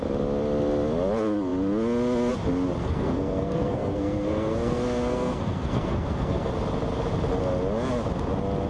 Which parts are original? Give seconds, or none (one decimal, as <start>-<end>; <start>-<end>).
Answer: 0.0-2.8; 6.5-8.7